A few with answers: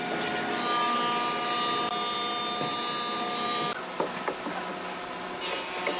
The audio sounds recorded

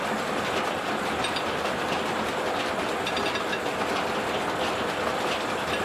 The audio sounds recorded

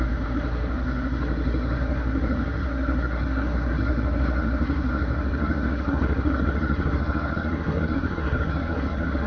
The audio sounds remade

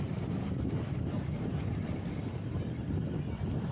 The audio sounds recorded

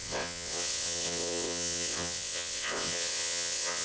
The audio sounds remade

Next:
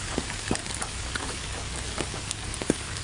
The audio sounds remade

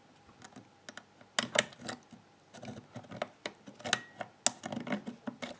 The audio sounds recorded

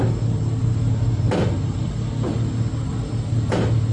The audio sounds recorded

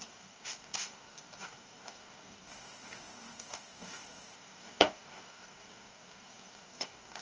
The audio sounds remade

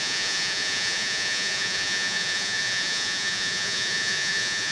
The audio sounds remade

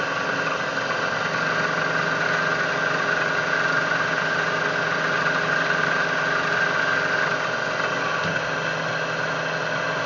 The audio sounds recorded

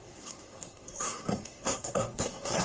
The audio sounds remade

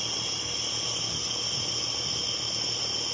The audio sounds recorded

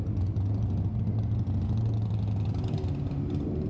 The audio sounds recorded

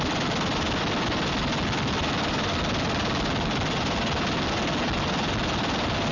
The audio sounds recorded